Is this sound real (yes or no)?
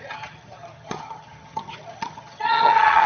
no